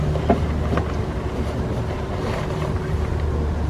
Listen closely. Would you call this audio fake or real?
real